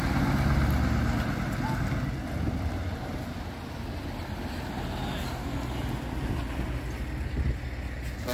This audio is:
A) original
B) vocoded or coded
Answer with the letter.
A